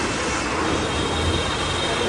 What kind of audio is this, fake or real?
real